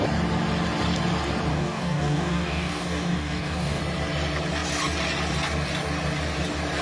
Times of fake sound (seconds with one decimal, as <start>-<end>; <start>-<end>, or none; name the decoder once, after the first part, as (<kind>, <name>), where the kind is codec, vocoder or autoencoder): 1.5-3.8 (codec, DAC)